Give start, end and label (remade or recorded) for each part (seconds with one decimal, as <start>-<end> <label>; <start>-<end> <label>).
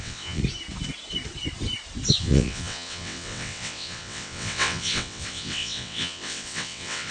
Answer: 0.0-0.4 remade; 0.4-2.2 recorded; 2.2-7.1 remade